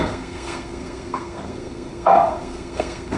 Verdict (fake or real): fake